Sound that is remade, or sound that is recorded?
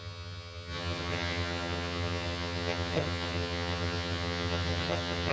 remade